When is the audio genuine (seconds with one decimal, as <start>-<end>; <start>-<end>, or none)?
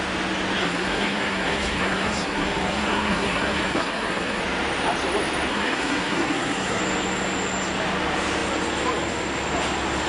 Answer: 0.0-0.6; 4.4-5.5; 6.8-10.1